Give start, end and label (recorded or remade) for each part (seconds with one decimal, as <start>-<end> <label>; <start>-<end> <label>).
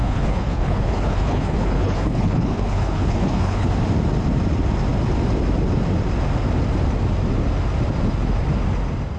0.0-3.7 remade; 3.7-9.2 recorded